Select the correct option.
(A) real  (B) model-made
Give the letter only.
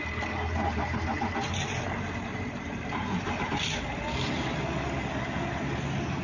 A